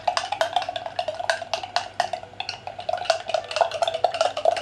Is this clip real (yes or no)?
yes